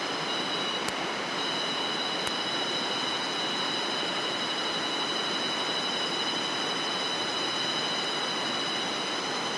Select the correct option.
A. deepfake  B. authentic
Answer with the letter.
B